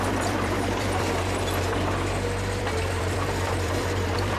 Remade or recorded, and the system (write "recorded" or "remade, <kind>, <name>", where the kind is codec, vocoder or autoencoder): remade, vocoder, BigVGAN v2